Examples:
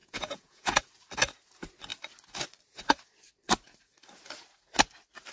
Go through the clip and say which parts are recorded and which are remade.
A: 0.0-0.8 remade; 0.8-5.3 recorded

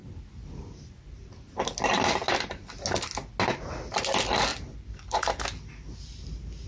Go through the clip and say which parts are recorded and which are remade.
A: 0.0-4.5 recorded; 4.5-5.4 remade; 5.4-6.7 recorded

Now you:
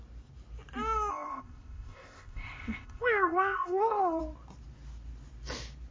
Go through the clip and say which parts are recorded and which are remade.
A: 0.0-1.1 recorded; 1.1-4.2 remade; 4.2-5.9 recorded